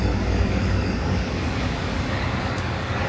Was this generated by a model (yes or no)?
yes